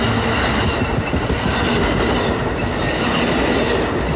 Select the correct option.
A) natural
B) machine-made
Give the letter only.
A